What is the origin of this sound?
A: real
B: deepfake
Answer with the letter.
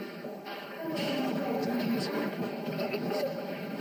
B